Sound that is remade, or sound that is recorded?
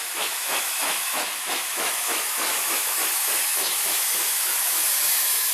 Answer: remade